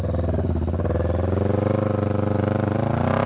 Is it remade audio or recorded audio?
recorded